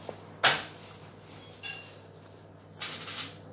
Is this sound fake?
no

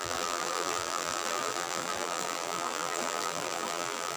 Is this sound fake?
yes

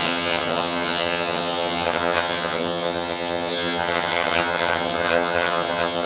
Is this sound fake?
yes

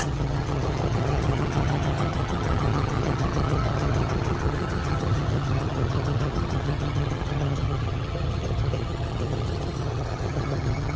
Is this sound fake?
yes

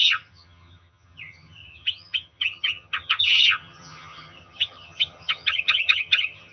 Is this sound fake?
yes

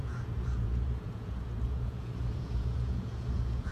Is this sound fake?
yes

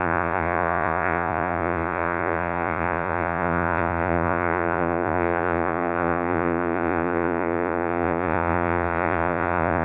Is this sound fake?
yes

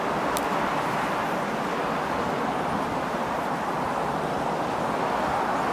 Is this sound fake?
no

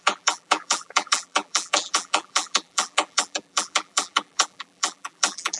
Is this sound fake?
yes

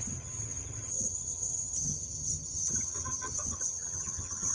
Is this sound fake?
yes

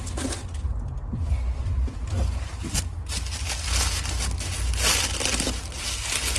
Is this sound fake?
no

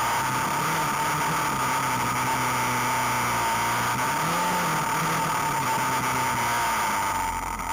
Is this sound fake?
no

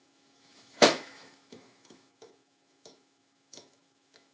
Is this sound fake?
yes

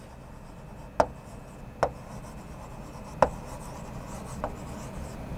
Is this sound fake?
no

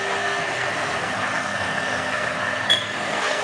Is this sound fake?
yes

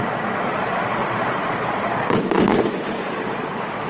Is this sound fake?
yes